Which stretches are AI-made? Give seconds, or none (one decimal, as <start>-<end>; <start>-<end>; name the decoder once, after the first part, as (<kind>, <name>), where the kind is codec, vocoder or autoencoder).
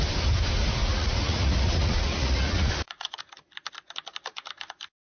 0.8-3.2 (vocoder, Vocos)